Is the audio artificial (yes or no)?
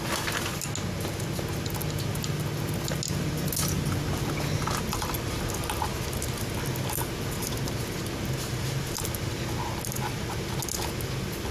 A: no